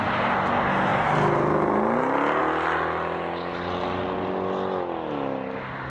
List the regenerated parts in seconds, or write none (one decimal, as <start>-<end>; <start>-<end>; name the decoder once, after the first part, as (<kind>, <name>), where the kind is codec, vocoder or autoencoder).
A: none